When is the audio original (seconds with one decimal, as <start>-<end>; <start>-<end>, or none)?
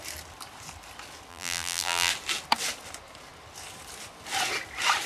0.0-1.3; 2.1-5.1